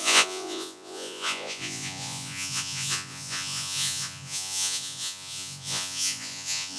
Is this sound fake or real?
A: fake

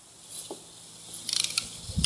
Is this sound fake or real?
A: real